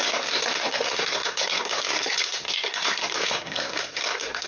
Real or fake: fake